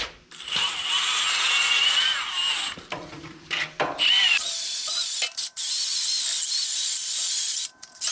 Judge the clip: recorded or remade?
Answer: remade